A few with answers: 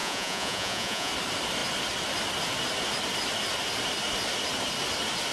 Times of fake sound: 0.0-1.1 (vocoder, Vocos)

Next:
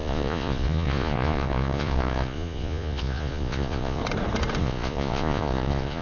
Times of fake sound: 0.0-4.0 (vocoder, Vocos); 4.6-6.0

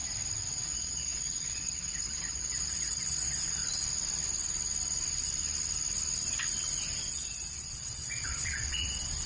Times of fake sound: 0.7-3.6 (vocoder, Vocos); 7.1-9.3

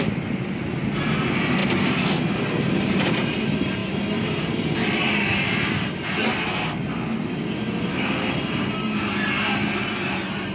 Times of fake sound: none

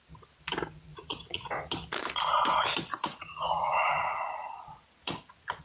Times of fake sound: 0.9-1.7 (vocoder, Vocos); 2.9-5.6

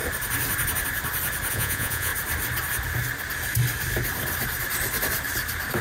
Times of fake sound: 1.5-2.1 (vocoder, Vocos)

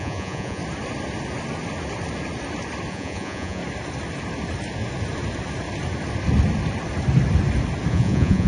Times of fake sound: 0.0-0.6 (vocoder, Vocos); 2.9-3.6; 7.9-8.5

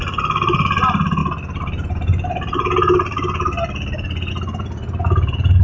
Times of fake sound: none